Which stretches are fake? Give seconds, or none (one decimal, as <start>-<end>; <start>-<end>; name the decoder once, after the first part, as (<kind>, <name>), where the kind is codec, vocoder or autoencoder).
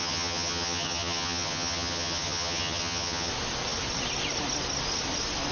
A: 0.0-3.3 (vocoder, HiFi-GAN)